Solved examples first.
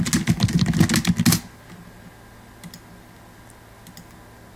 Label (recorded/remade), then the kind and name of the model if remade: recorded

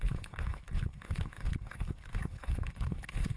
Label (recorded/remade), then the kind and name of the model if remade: remade, codec, HILCodec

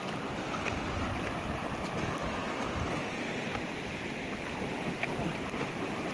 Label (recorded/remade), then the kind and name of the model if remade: recorded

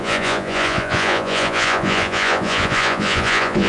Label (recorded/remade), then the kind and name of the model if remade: remade, vocoder, Vocos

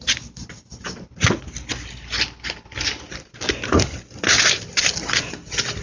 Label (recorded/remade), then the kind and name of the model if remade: recorded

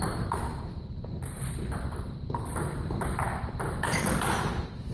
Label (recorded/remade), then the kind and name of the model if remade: recorded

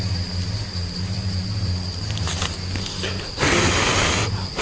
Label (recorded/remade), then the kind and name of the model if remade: recorded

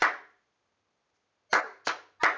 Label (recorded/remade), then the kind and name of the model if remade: recorded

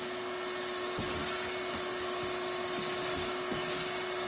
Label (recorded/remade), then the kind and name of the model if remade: recorded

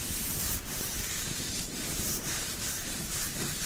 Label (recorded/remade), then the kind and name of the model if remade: remade, vocoder, BigVGAN v2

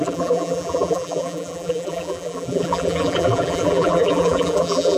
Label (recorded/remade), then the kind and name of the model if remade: remade, vocoder, BigVGAN v2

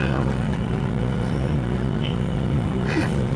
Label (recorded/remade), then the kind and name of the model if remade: remade, vocoder, Vocos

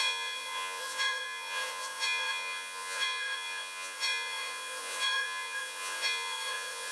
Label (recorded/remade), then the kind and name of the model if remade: remade, vocoder, Vocos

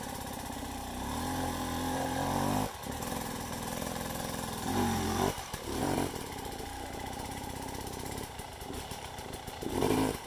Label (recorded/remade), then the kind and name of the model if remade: remade, vocoder, BigVGAN v2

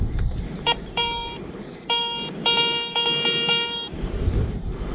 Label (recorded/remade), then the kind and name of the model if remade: remade, vocoder, BigVGAN v2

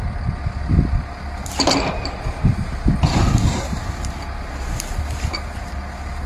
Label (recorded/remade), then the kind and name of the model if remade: recorded